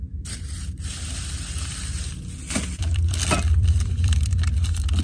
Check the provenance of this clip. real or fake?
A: fake